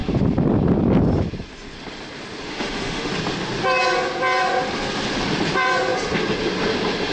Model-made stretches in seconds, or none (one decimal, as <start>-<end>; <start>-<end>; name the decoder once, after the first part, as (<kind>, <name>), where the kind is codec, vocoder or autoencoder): 2.5-3.1 (autoencoder, DAC-VAE)